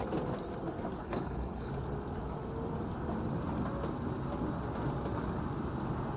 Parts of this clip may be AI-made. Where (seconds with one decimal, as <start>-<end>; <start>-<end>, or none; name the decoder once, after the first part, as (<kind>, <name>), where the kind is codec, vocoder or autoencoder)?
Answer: 1.0-1.7 (codec, HILCodec)